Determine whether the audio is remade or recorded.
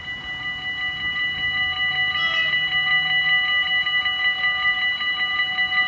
recorded